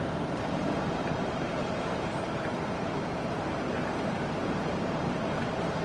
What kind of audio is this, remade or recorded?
remade